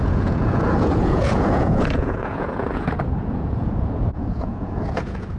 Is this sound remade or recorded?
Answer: remade